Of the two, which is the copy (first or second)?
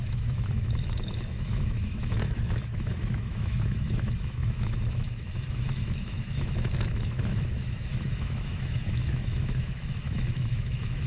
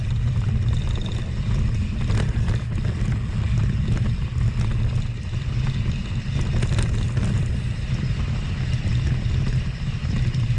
first